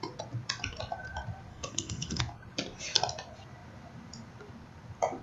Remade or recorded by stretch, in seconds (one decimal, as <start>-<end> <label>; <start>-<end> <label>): 0.0-1.5 recorded; 1.5-2.2 remade; 2.2-5.2 recorded